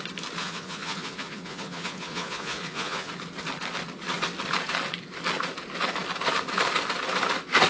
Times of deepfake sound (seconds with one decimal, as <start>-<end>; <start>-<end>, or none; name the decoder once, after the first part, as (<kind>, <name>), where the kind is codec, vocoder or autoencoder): 0.4-3.1 (vocoder, Vocos)